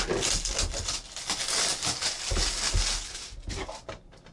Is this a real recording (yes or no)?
yes